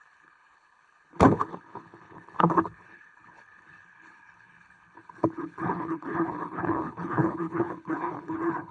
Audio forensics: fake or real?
fake